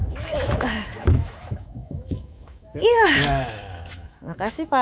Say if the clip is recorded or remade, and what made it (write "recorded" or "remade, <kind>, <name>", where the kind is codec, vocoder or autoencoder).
remade, autoencoder, DAC-VAE